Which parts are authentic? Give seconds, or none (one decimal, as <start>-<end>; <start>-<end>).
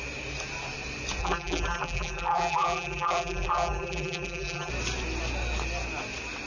0.0-1.2; 4.7-6.5